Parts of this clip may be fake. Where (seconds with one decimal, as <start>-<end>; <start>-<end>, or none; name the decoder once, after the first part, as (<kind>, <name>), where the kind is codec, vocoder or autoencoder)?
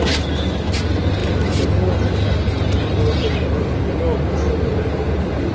none